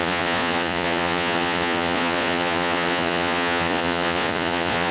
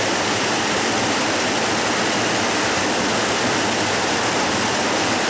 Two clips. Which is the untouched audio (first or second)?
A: second